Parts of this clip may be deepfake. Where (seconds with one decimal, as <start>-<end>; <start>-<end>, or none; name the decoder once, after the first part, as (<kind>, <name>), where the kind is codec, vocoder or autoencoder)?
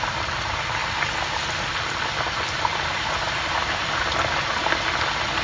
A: 2.7-4.0 (vocoder, BigVGAN v2)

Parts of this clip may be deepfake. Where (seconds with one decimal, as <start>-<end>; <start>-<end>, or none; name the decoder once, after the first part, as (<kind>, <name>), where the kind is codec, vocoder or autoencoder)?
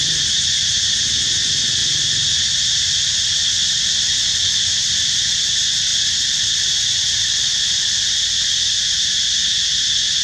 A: none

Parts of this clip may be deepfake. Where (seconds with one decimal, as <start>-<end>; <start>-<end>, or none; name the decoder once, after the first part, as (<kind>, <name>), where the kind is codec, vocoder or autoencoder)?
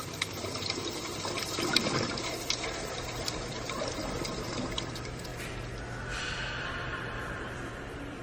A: 0.0-5.3 (vocoder, BigVGAN v2); 6.2-8.2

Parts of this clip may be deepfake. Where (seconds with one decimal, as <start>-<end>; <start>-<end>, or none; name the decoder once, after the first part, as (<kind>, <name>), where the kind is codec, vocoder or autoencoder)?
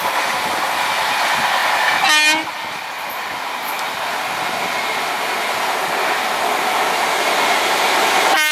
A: none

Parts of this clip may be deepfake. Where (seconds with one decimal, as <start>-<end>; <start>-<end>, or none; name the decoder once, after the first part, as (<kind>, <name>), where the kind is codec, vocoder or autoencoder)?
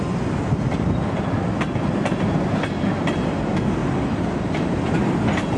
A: none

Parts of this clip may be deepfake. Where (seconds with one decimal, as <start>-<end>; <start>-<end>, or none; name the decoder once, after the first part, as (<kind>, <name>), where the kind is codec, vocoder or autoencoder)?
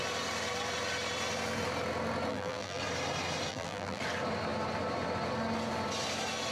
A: 2.3-2.8 (vocoder, BigVGAN v2); 3.5-4.0